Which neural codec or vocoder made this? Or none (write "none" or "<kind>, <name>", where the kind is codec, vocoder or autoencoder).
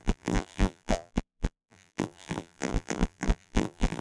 vocoder, BigVGAN v2